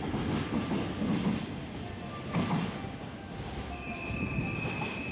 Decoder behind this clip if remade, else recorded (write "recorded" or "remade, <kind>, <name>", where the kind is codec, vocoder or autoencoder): recorded